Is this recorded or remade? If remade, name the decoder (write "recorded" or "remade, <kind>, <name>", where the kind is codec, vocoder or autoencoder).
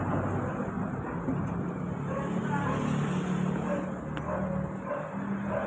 recorded